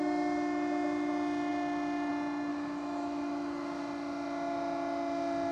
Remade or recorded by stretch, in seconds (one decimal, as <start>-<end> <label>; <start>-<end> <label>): 0.0-2.5 recorded; 2.5-3.8 remade; 3.8-5.5 recorded